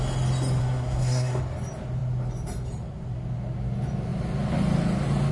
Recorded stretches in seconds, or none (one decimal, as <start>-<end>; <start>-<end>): 0.0-0.6; 1.4-5.3